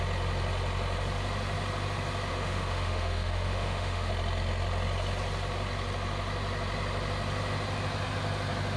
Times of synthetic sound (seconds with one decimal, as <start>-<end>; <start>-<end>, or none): 2.3-4.1